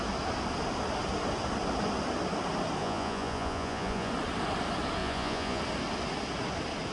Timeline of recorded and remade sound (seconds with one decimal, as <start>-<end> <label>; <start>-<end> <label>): 0.0-2.8 recorded; 2.8-4.1 remade; 4.1-5.0 recorded; 5.0-5.6 remade; 5.6-6.9 recorded